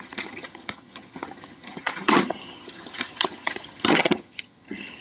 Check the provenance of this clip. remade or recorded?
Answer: remade